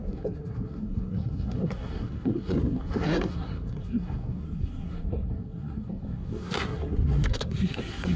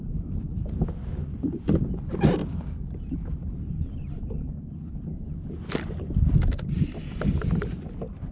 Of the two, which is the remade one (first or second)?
first